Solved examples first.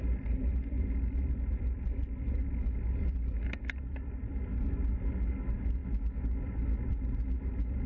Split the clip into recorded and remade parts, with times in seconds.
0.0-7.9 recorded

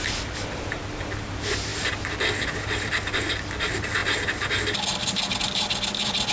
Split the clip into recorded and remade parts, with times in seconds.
0.0-6.3 recorded

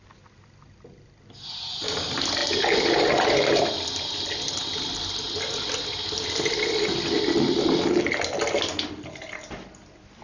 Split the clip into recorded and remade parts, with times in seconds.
0.0-10.2 recorded

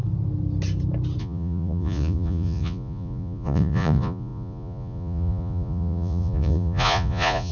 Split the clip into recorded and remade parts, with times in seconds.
0.0-1.2 recorded; 1.2-7.5 remade

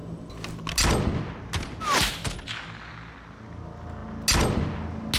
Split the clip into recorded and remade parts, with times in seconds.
0.0-5.2 recorded

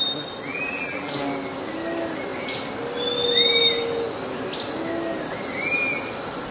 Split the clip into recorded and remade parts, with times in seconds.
0.0-0.5 recorded; 0.5-1.1 remade; 1.1-6.5 recorded

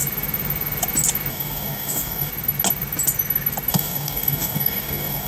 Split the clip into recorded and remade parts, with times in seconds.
0.0-1.3 recorded; 1.3-2.3 remade; 2.3-3.7 recorded; 3.7-5.3 remade